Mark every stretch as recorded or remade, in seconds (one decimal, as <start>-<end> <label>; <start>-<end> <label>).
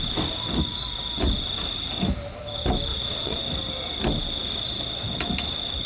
0.0-2.9 recorded; 2.9-3.4 remade; 3.4-5.9 recorded